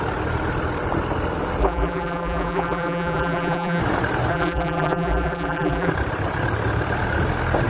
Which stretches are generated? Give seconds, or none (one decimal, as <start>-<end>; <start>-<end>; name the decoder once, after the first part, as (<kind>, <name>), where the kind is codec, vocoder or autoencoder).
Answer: 1.6-3.8 (vocoder, BigVGAN v2); 4.3-5.9